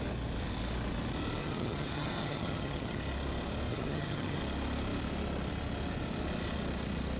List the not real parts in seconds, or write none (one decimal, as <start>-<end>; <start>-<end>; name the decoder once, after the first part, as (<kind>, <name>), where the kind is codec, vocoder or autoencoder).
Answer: 1.4-3.0 (vocoder, HiFi-GAN); 3.7-4.4

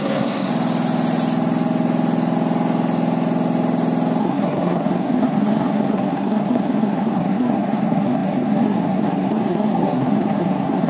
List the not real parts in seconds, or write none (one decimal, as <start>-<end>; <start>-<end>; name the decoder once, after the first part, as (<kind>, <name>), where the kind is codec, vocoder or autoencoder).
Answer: 0.0-0.5 (codec, SNAC); 4.2-10.9

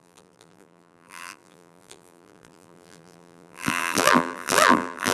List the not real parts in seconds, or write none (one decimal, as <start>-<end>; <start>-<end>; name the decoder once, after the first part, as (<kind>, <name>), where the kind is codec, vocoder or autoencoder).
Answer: 0.0-5.1 (vocoder, BigVGAN v2)

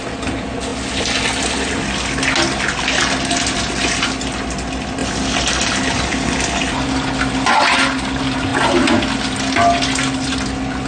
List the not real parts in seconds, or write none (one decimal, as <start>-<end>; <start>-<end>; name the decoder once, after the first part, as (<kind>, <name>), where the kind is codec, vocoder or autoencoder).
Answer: none

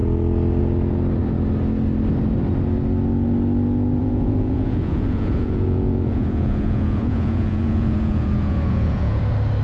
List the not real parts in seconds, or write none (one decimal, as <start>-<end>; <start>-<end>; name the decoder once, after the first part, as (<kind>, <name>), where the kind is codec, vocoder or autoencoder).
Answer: 4.0-9.2 (vocoder, Vocos)

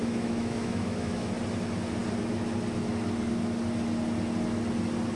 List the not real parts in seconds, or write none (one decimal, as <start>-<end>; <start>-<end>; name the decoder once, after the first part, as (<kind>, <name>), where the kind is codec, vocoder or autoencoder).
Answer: 0.0-1.3 (autoencoder, DAC-VAE)